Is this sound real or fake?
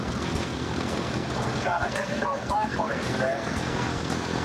fake